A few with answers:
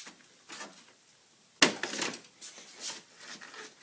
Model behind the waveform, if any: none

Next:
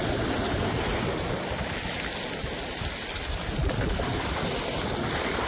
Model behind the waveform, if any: none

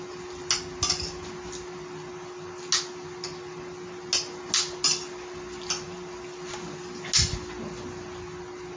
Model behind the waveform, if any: none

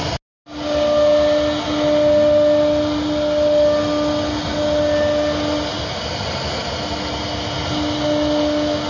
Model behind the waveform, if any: none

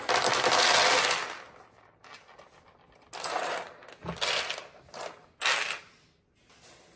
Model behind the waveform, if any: none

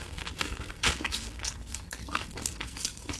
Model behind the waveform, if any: codec, SNAC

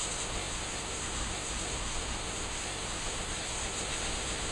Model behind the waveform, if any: codec, SNAC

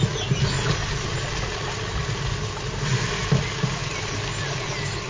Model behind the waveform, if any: none